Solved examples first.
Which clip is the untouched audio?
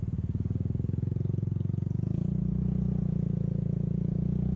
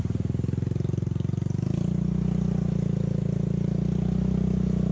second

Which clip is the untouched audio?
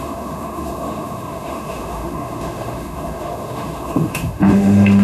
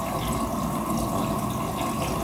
second